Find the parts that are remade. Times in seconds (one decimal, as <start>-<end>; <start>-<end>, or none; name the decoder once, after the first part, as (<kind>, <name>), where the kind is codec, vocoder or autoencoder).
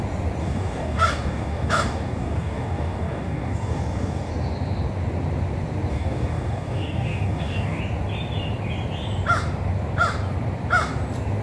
0.4-4.3 (codec, DAC); 5.9-7.8